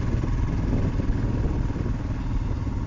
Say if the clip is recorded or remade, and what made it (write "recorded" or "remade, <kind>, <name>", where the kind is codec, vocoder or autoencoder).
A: recorded